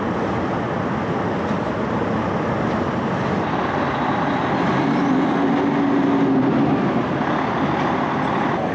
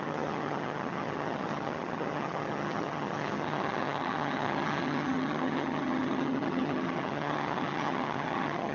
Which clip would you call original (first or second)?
first